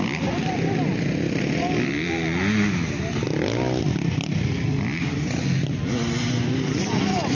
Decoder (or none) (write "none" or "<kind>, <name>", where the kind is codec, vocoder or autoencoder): none